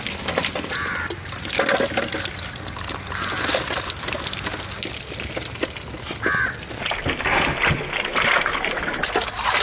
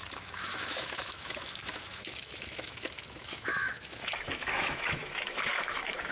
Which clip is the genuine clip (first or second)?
first